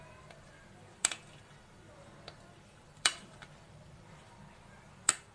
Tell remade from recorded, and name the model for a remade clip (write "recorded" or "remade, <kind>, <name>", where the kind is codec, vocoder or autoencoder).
remade, vocoder, BigVGAN v2